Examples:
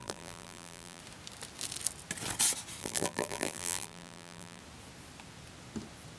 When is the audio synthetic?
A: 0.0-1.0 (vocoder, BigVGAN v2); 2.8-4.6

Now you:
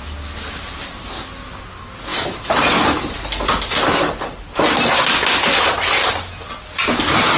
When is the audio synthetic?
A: none

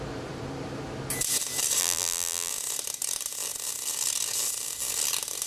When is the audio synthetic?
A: 1.8-2.5 (vocoder, BigVGAN v2)